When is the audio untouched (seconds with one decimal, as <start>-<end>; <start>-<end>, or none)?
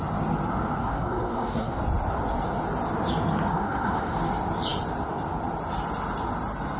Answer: 0.0-0.8; 1.8-3.5; 4.2-6.8